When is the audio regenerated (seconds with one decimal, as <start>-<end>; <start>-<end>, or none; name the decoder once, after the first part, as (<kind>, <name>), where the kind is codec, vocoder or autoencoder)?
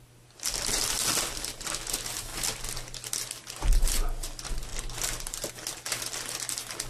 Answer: none